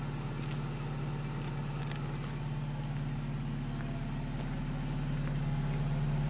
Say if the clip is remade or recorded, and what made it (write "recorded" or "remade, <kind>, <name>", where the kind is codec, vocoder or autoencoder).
recorded